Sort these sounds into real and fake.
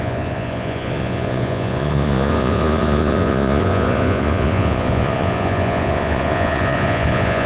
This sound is fake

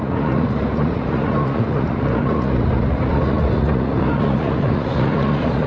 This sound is fake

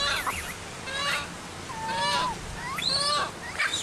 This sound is real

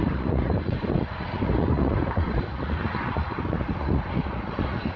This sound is fake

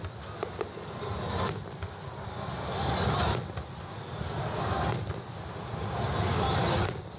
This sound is real